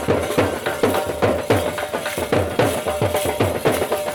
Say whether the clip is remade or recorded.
recorded